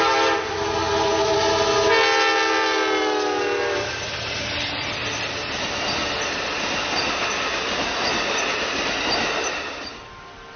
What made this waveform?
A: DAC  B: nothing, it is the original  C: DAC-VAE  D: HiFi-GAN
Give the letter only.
B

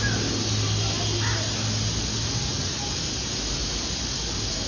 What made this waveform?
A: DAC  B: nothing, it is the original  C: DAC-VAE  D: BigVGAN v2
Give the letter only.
B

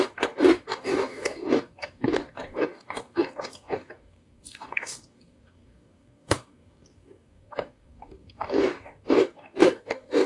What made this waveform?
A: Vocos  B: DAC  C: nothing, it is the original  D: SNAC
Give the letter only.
B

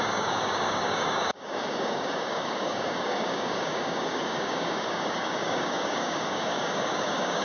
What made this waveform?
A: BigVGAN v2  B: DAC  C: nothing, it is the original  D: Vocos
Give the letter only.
B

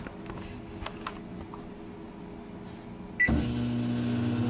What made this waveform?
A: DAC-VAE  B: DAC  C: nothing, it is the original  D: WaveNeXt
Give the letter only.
C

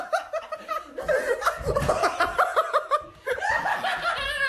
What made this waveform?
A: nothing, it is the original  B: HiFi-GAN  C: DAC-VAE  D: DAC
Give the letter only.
A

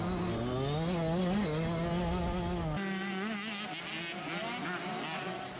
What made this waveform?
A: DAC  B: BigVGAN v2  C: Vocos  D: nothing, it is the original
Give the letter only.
D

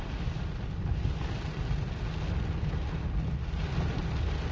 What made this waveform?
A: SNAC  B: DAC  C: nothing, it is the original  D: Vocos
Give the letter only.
C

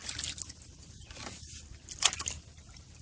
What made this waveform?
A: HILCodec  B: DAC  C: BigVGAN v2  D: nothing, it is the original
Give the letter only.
D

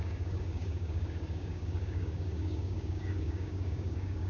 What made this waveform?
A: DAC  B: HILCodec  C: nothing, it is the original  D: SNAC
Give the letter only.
A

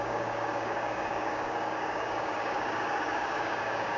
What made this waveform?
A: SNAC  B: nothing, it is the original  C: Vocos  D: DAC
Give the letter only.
D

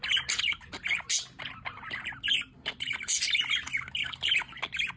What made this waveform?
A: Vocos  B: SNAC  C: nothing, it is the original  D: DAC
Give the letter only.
C